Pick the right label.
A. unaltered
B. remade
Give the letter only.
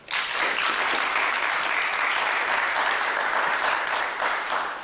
A